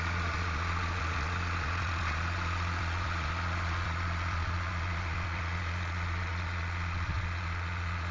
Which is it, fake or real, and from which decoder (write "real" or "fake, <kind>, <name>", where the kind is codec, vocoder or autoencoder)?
fake, vocoder, Vocos